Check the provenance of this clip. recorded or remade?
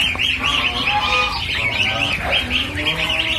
recorded